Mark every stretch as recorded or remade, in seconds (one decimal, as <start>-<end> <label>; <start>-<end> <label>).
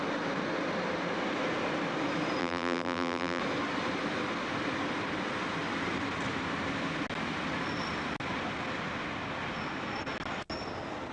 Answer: 0.0-2.4 recorded; 2.4-3.4 remade; 3.4-11.1 recorded